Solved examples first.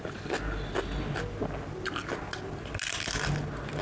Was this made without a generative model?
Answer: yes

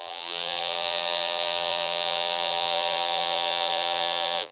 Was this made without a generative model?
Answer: no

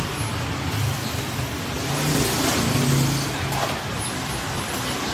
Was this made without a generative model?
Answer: yes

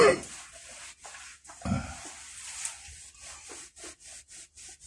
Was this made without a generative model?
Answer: yes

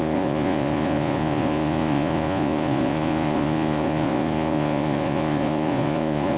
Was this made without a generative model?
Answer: no